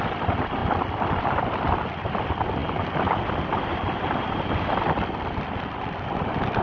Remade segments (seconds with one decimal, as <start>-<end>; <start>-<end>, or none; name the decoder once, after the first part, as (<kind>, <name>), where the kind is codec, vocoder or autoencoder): none